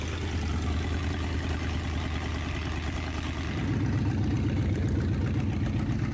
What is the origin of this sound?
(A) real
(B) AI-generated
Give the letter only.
A